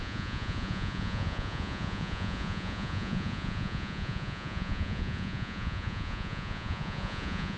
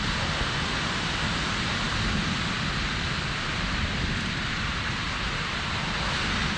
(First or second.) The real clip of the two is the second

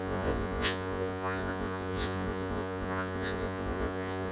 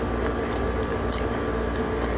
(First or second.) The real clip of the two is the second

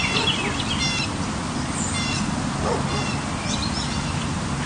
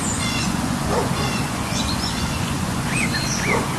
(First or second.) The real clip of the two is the first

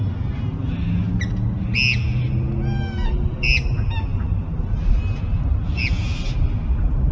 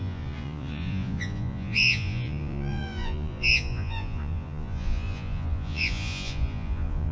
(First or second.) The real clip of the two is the first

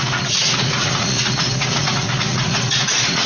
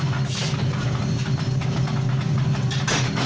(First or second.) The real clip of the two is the second